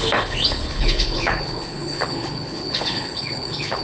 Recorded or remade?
remade